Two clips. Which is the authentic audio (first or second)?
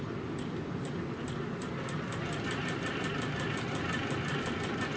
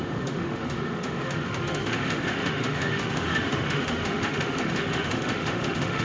first